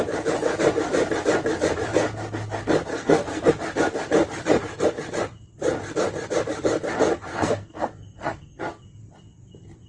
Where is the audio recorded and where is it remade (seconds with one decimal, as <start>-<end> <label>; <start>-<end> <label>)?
0.0-2.9 recorded; 2.9-3.5 remade; 3.5-7.3 recorded; 7.3-8.6 remade; 8.6-9.9 recorded